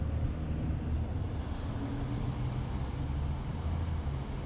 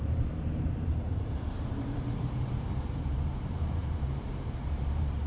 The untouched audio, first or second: first